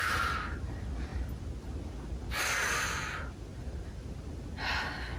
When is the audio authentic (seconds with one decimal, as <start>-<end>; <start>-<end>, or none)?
0.0-5.2